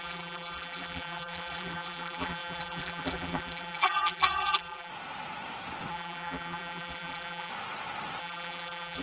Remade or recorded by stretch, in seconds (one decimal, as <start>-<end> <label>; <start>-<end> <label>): 0.0-4.9 remade; 4.9-5.9 recorded; 5.9-7.5 remade; 7.5-8.2 recorded; 8.2-9.0 remade